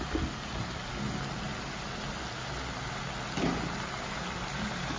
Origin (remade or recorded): recorded